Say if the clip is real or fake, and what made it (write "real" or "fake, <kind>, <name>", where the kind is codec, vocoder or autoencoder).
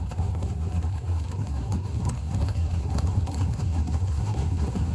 fake, codec, SNAC